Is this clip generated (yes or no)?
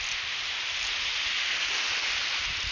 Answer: no